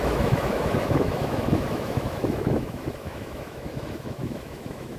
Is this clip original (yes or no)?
no